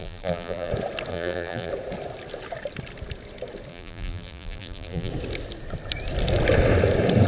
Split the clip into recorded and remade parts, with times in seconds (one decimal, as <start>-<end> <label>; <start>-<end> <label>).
0.0-0.7 remade; 0.7-1.1 recorded; 1.1-1.7 remade; 1.7-3.7 recorded; 3.7-5.1 remade; 5.1-7.3 recorded